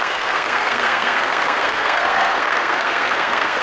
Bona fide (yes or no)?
no